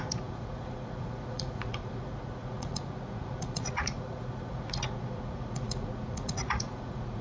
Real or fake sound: fake